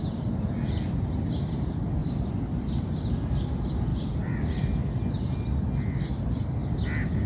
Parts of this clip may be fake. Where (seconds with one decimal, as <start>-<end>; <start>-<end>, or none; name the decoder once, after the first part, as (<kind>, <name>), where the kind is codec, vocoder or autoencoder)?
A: none